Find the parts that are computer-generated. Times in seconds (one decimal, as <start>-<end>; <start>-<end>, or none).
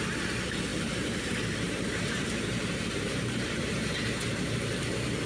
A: 0.7-3.9